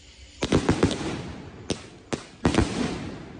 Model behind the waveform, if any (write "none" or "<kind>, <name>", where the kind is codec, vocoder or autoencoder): none